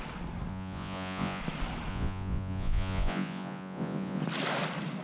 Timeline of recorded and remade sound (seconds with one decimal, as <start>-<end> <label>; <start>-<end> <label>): 0.0-0.5 recorded; 0.5-1.4 remade; 1.4-1.9 recorded; 1.9-4.2 remade; 4.2-5.0 recorded